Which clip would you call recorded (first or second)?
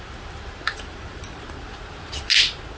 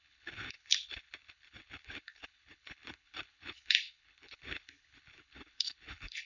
first